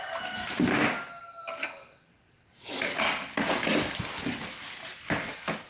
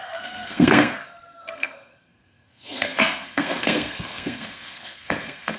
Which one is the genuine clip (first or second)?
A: first